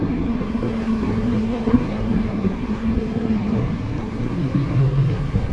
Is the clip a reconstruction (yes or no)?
yes